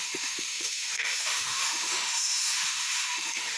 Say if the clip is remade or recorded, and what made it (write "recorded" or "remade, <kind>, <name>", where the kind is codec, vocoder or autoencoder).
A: remade, autoencoder, DAC-VAE